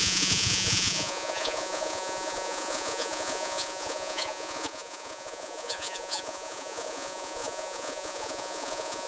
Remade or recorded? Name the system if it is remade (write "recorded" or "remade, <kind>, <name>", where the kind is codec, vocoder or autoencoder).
remade, vocoder, Vocos